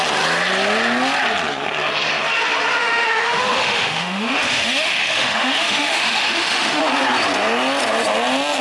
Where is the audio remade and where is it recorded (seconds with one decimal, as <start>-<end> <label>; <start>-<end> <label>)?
0.0-2.8 recorded; 2.8-6.8 remade; 6.8-8.6 recorded